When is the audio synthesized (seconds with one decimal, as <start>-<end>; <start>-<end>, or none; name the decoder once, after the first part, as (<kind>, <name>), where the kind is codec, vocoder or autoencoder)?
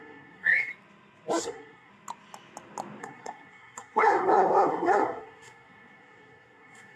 0.0-0.7 (codec, SNAC); 1.4-1.9; 3.0-7.0